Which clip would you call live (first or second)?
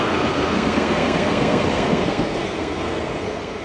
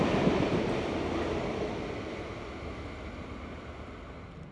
second